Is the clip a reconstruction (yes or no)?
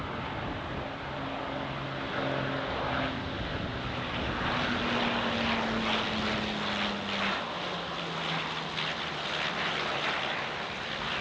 no